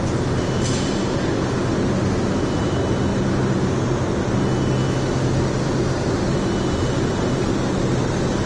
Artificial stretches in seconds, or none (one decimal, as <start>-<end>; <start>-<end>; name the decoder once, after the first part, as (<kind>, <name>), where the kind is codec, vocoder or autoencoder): none